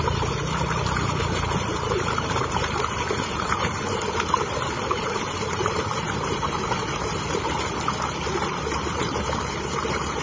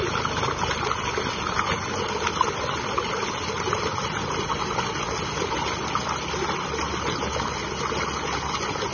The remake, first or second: first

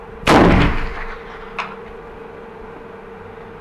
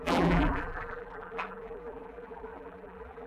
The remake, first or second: second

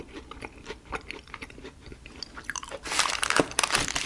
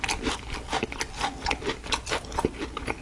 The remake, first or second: first